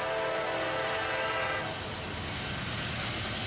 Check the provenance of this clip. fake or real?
real